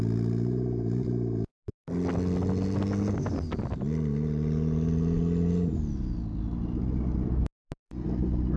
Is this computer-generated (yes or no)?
no